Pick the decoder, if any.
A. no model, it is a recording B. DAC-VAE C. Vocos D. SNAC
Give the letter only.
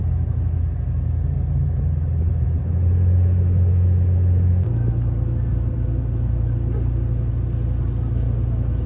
A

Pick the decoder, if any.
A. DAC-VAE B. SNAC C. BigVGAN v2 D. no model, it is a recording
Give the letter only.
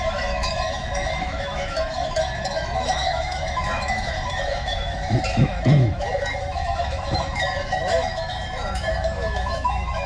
A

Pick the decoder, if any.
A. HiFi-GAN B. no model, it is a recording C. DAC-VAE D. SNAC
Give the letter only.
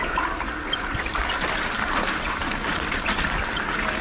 B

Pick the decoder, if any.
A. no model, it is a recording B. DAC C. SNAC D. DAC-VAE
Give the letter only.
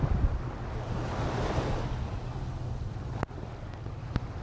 A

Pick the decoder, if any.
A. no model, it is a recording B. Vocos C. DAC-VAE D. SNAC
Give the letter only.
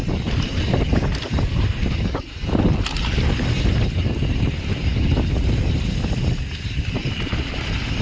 A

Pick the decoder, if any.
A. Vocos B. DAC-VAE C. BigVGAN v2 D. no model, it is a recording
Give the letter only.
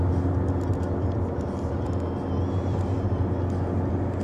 D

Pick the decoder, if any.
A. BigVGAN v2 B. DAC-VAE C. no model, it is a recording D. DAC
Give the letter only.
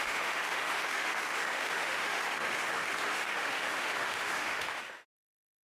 B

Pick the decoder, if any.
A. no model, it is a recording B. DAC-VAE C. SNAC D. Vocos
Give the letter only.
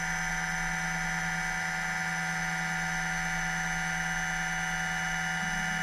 A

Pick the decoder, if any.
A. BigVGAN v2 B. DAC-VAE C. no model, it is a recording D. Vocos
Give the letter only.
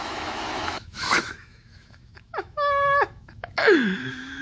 B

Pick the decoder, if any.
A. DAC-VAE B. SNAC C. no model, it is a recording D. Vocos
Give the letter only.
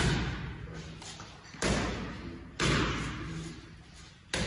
C